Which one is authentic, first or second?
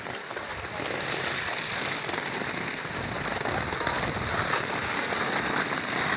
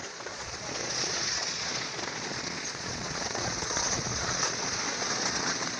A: first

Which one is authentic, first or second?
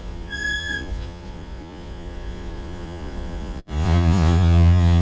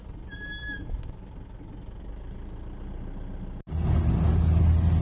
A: second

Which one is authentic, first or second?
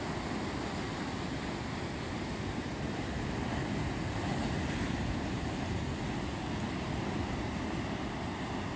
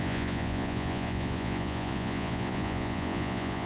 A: first